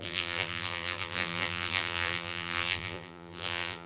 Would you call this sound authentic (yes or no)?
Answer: no